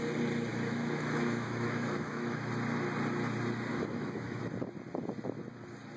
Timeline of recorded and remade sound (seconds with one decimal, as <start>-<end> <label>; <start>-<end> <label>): 0.0-0.5 recorded; 0.5-2.5 remade; 2.5-3.7 recorded; 3.7-4.4 remade; 4.4-6.0 recorded

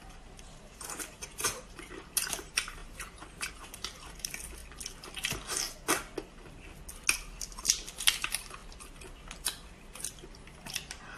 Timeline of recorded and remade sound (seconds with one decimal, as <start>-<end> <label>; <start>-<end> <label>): 0.0-4.6 remade; 4.6-8.2 recorded; 8.2-8.6 remade; 8.6-10.7 recorded; 10.7-11.2 remade

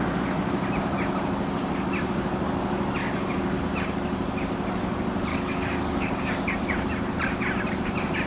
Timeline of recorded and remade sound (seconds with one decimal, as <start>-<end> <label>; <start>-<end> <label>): 0.0-3.0 recorded; 3.0-3.6 remade; 3.6-5.3 recorded; 5.3-6.2 remade; 6.2-8.3 recorded

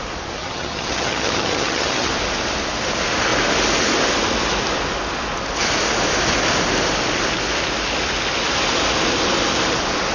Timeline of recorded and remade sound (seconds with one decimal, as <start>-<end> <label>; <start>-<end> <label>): 0.0-0.4 recorded; 0.4-2.1 remade; 2.1-10.1 recorded